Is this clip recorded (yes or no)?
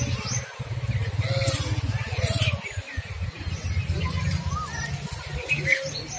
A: yes